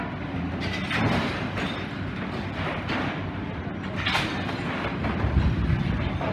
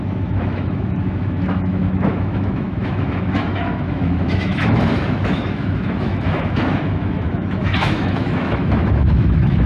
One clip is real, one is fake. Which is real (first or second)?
first